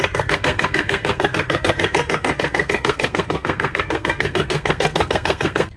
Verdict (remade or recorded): remade